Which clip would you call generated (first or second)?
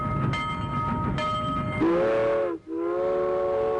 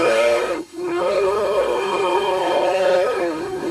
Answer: second